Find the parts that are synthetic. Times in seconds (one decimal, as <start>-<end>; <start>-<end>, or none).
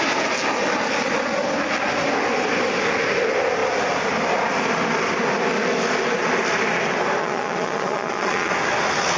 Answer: 7.2-8.5